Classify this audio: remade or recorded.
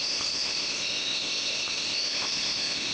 remade